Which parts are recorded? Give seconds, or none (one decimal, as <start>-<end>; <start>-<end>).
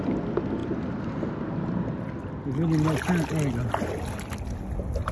0.0-5.1